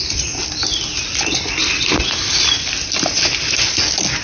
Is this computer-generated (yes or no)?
no